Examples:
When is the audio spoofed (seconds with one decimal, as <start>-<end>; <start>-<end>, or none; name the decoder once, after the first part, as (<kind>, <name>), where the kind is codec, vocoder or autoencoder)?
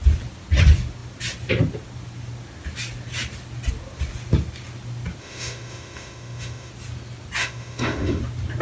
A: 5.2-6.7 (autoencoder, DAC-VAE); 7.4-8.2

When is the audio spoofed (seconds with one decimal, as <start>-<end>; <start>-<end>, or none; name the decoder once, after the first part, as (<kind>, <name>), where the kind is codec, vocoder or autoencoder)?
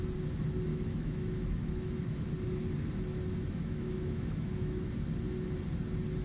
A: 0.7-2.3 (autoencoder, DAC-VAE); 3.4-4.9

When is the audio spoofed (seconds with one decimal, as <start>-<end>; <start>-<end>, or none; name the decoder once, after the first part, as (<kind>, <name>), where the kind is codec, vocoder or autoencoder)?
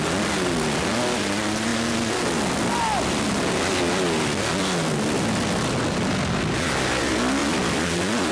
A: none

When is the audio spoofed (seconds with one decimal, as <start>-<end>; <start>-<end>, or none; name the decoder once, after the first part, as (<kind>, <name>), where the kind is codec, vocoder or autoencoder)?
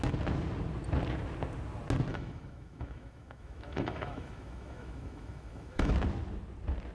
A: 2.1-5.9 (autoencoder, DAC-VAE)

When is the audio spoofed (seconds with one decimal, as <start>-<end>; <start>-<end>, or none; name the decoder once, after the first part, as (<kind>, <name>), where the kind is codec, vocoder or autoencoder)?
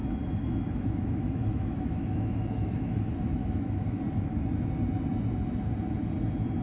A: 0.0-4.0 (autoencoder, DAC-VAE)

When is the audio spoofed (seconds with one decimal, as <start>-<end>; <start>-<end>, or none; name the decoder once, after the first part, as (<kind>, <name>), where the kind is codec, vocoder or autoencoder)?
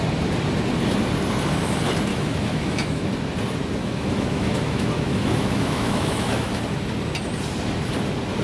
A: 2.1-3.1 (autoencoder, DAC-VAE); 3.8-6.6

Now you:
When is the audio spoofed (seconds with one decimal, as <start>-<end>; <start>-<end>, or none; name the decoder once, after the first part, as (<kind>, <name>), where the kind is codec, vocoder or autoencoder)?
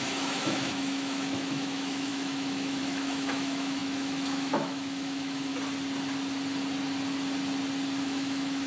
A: 0.0-5.5 (autoencoder, DAC-VAE); 8.0-8.7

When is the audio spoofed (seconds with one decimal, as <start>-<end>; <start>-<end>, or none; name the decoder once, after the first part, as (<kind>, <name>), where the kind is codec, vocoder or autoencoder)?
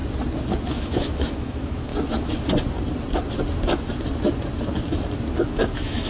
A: 0.7-1.9 (autoencoder, DAC-VAE); 5.6-6.1